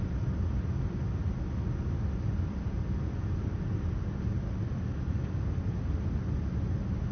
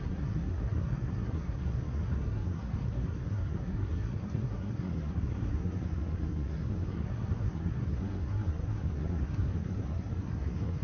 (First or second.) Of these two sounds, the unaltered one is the first